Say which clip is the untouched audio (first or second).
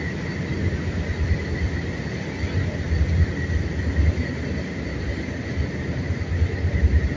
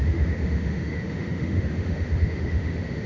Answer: first